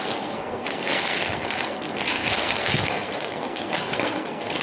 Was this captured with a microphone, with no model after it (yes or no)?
no